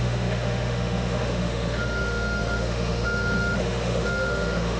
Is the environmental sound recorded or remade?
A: remade